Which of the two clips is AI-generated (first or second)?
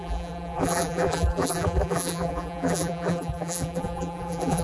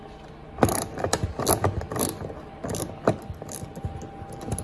first